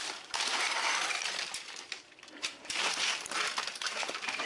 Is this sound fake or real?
fake